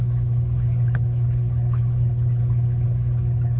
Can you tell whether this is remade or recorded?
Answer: remade